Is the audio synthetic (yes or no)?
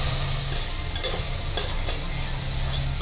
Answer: no